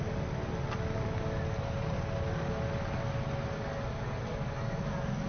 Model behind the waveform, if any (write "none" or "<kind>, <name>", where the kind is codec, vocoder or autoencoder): none